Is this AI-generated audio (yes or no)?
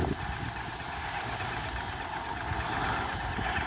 no